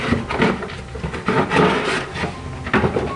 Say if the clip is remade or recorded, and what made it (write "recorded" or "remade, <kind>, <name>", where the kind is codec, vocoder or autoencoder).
recorded